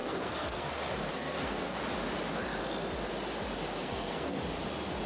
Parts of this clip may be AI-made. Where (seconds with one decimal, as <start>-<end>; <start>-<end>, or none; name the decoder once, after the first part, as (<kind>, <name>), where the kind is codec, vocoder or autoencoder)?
0.0-0.7 (codec, SNAC); 1.1-1.8; 3.8-4.4

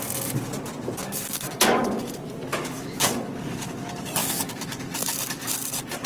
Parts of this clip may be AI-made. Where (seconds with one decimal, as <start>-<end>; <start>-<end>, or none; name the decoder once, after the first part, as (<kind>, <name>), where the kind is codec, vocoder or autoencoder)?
1.0-2.1 (codec, DAC); 2.5-3.3; 4.2-4.8

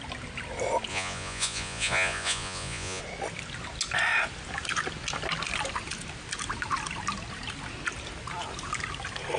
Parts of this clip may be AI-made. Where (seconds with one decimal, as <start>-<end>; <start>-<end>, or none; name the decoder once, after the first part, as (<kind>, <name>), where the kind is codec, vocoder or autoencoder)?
0.9-3.0 (vocoder, Vocos)

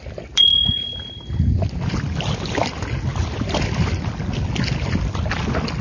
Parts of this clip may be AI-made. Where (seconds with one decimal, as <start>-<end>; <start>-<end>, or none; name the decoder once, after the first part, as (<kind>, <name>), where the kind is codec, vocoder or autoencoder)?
none

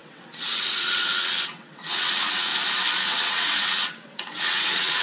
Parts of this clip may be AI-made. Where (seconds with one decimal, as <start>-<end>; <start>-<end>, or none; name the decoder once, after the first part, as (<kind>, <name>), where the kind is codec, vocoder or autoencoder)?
0.0-2.5 (vocoder, WaveNeXt); 3.0-5.0

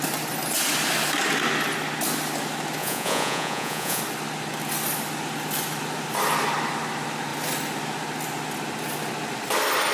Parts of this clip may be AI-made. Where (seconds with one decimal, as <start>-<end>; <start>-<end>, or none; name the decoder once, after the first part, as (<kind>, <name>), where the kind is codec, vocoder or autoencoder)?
2.8-4.0 (vocoder, Vocos)